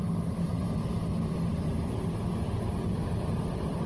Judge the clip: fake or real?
real